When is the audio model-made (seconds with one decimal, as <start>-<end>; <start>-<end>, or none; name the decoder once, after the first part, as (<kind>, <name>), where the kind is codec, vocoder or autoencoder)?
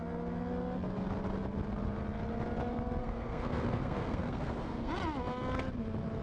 3.0-4.9 (codec, SNAC)